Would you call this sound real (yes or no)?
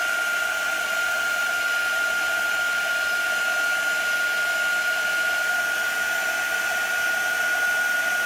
yes